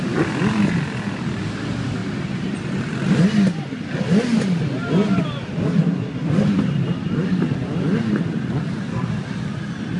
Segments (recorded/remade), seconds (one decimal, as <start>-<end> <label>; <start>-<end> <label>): 0.0-5.8 recorded; 5.8-6.3 remade; 6.3-10.0 recorded